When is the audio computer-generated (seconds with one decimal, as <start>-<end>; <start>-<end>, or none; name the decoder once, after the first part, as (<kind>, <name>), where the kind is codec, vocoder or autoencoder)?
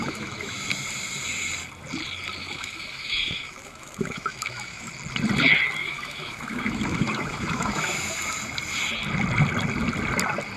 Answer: 0.0-0.7 (autoencoder, DAC-VAE); 2.4-4.9; 5.8-8.1